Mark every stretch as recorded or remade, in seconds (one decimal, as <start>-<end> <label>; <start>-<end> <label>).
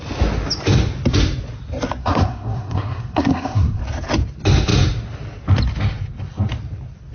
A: 0.0-2.0 recorded; 2.0-3.8 remade; 3.8-7.1 recorded